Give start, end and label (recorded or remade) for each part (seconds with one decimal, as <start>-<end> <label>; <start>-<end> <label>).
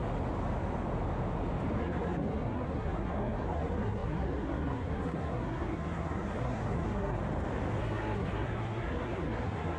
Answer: 0.0-1.8 recorded; 1.8-7.2 remade; 7.2-7.8 recorded; 7.8-9.8 remade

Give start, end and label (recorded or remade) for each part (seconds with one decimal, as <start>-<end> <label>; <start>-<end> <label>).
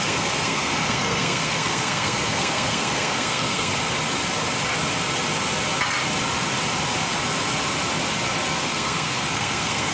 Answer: 0.0-3.7 remade; 3.7-8.6 recorded; 8.6-9.9 remade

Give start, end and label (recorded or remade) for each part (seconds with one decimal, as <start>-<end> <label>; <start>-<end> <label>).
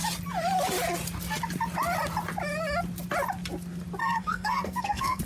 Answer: 0.0-4.0 recorded; 4.0-5.2 remade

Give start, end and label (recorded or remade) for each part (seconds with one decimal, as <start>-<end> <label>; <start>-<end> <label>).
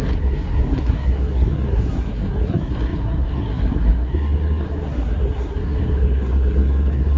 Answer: 0.0-7.2 remade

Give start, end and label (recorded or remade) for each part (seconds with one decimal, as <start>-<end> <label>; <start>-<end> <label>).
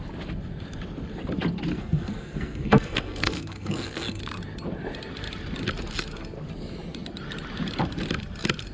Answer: 0.0-1.7 recorded; 1.7-4.2 remade; 4.2-8.7 recorded